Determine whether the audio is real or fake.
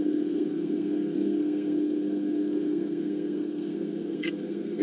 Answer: fake